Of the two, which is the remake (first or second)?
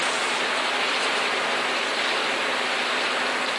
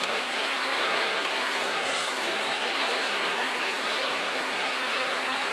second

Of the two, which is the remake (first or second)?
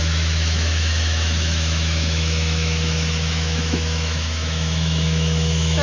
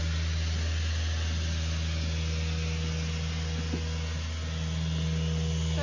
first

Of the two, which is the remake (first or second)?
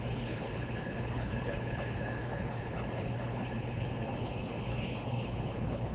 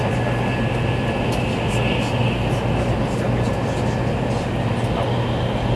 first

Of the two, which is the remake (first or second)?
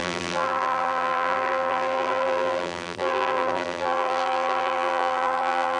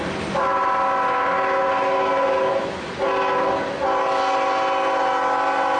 first